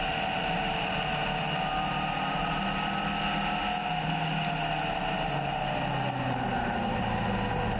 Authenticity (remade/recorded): recorded